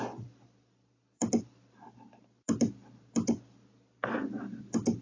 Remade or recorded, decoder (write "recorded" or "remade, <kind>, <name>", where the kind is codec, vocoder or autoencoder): recorded